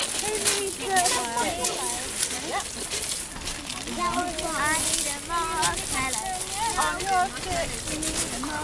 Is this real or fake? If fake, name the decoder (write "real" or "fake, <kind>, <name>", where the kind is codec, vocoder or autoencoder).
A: real